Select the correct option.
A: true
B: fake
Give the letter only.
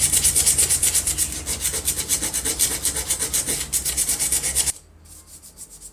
A